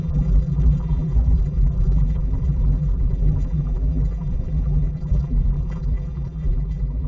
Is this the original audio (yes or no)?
no